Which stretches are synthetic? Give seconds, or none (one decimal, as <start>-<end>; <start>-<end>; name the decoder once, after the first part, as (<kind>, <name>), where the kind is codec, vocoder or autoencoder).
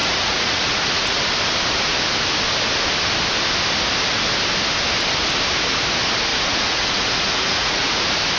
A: 0.0-1.2 (vocoder, Vocos); 6.3-8.0